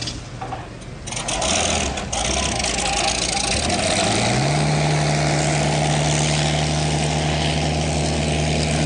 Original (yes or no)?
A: yes